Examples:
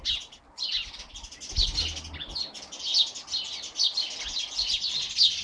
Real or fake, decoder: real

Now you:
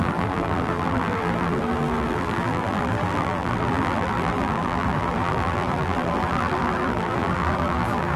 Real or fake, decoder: fake, vocoder, BigVGAN v2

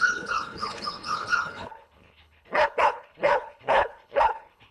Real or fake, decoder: fake, codec, HILCodec